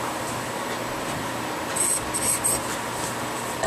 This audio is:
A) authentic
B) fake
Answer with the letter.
A